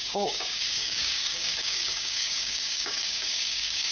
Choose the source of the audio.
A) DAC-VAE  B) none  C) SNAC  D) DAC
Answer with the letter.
D